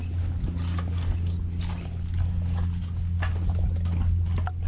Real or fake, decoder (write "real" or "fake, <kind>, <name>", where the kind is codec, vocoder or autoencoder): real